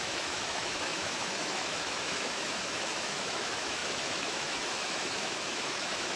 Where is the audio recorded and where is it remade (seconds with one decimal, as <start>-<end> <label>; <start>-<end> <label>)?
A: 0.0-6.2 remade